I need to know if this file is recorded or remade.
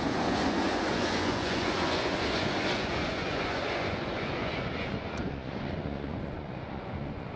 remade